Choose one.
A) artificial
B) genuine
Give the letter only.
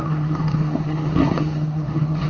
A